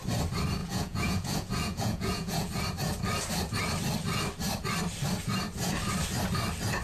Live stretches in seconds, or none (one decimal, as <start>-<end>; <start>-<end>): 0.0-0.6; 2.5-6.8